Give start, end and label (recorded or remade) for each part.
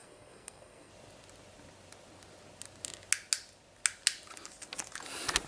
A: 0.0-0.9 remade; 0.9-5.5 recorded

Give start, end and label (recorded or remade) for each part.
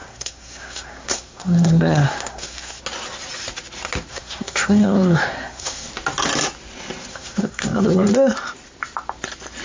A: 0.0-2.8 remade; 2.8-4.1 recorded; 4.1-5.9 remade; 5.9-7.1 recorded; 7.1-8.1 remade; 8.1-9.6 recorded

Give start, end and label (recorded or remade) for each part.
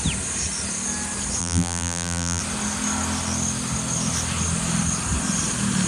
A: 0.0-1.4 recorded; 1.4-2.4 remade; 2.4-5.9 recorded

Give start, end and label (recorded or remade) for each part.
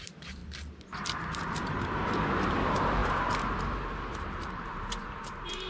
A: 0.0-0.4 remade; 0.4-1.5 recorded; 1.5-5.7 remade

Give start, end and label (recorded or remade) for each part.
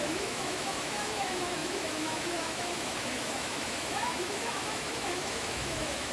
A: 0.0-6.1 remade